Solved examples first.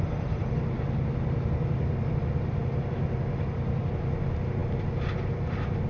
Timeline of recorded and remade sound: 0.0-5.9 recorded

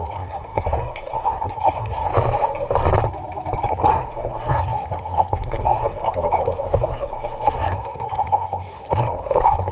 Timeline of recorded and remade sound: 0.0-2.1 remade; 2.1-3.7 recorded; 3.7-9.7 remade

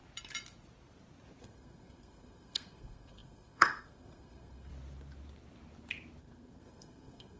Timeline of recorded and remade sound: 0.0-1.4 recorded; 1.4-4.7 remade; 4.7-6.2 recorded; 6.2-7.4 remade

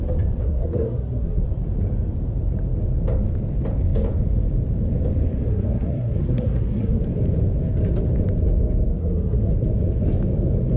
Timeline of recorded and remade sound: 0.0-0.4 recorded; 0.4-1.4 remade; 1.4-5.5 recorded; 5.5-7.0 remade; 7.0-8.9 recorded; 8.9-9.5 remade; 9.5-10.8 recorded

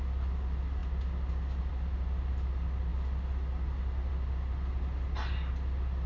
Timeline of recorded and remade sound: 0.0-6.1 recorded